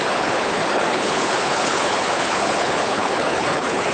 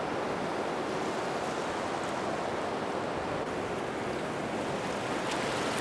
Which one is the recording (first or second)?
second